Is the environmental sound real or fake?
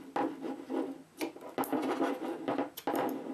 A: real